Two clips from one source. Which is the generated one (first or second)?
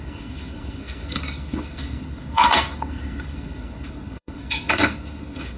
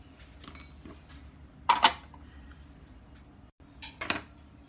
first